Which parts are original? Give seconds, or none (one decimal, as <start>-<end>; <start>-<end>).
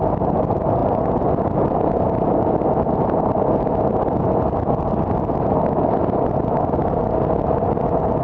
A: 0.0-8.2